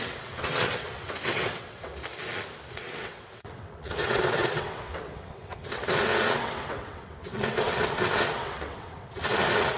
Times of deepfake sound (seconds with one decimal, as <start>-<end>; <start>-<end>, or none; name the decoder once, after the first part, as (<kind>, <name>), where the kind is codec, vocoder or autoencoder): 0.0-1.9 (vocoder, WaveNeXt); 2.7-9.8